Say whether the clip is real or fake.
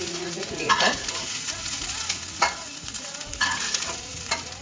fake